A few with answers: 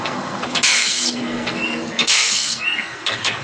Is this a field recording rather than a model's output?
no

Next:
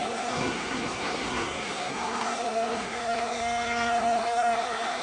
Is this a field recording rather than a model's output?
no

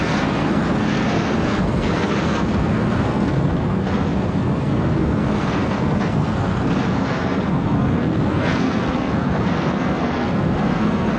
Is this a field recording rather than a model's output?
no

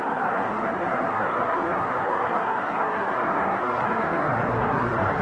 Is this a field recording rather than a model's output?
no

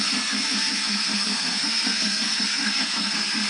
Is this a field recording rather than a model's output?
no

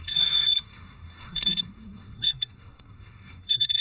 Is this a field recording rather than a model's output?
no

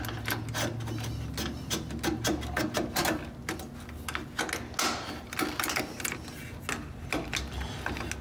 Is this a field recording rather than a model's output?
yes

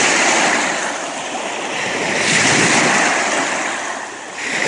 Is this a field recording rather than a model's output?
yes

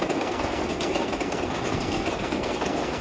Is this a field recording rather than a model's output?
no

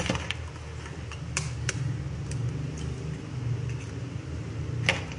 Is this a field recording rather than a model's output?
yes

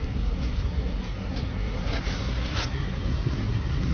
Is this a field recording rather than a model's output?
no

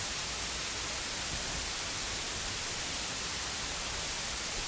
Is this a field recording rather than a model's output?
yes